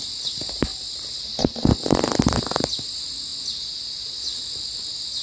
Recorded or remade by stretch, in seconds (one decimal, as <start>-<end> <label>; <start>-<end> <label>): 0.0-5.2 recorded